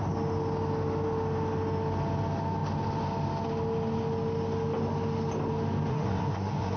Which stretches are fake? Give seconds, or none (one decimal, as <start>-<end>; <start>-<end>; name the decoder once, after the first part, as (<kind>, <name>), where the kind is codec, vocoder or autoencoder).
5.9-6.8 (codec, SNAC)